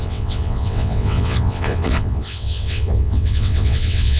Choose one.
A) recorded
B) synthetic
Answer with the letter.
B